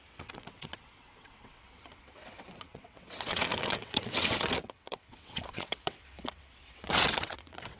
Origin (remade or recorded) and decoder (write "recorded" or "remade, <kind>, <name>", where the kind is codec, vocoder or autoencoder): remade, vocoder, WaveNeXt